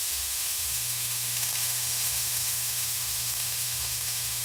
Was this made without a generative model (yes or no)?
no